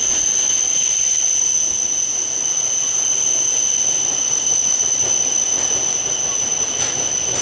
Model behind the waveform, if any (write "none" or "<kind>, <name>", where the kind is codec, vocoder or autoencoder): none